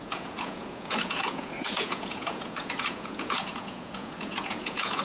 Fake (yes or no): yes